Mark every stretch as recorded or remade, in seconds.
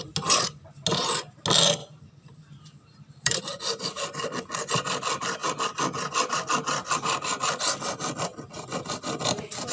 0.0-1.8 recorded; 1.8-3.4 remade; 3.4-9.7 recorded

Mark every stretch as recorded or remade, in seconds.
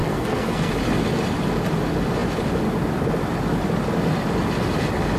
0.0-0.7 remade; 0.7-5.2 recorded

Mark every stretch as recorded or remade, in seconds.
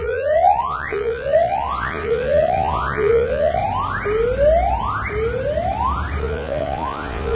0.0-3.6 remade; 3.6-6.2 recorded; 6.2-7.3 remade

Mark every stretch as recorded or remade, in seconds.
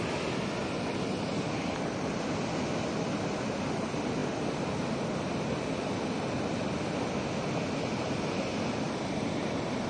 0.0-9.9 recorded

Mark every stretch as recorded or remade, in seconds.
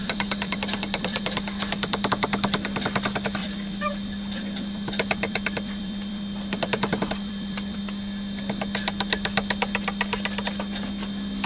0.0-2.1 remade; 2.1-3.4 recorded; 3.4-7.8 remade; 7.8-11.5 recorded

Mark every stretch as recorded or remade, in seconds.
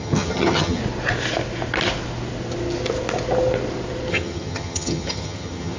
0.0-0.8 remade; 0.8-4.1 recorded; 4.1-5.8 remade